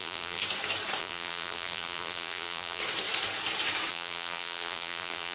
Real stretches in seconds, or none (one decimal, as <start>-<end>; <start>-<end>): 0.4-1.0; 2.8-3.9